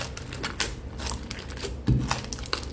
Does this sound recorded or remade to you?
recorded